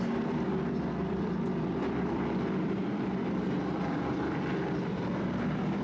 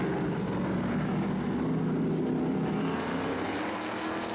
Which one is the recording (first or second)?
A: second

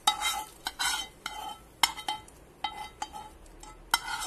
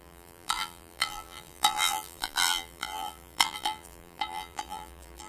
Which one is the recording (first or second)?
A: first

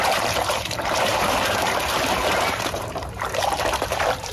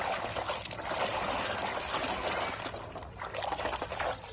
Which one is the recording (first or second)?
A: second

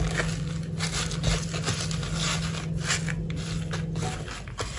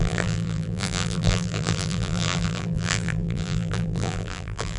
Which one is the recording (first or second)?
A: first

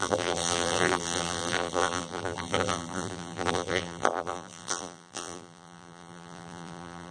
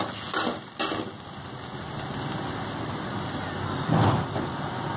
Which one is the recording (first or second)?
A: second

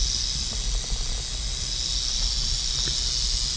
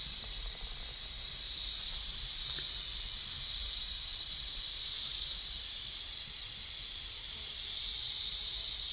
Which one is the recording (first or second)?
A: first